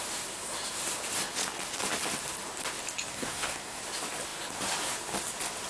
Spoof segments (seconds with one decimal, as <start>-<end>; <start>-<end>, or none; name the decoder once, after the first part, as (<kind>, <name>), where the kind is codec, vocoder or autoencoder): 3.1-3.8 (codec, SNAC)